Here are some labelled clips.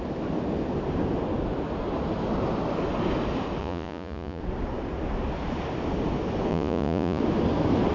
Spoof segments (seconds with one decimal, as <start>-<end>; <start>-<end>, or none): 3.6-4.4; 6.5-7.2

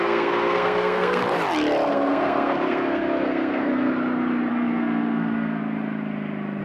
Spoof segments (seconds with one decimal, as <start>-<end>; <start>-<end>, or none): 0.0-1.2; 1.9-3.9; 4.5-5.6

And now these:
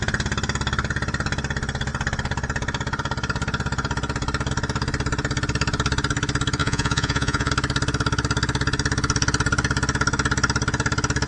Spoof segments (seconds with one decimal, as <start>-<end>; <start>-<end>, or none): 6.6-7.5

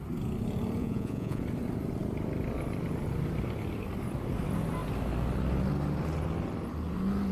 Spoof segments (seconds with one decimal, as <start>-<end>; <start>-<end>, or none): 0.8-1.4